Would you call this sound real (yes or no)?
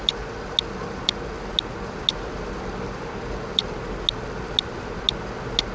yes